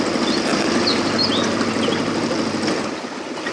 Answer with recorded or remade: recorded